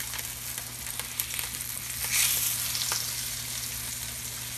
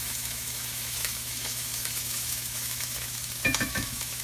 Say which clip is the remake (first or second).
second